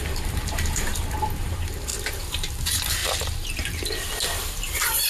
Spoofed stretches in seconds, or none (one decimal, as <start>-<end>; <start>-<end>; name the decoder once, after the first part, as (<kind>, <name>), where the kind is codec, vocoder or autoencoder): 0.0-0.9 (vocoder, BigVGAN v2); 1.4-1.9; 2.5-3.0; 4.4-5.1